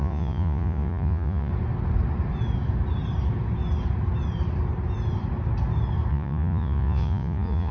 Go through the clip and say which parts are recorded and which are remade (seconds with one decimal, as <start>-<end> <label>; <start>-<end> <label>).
0.0-1.5 remade; 1.5-6.1 recorded; 6.1-7.7 remade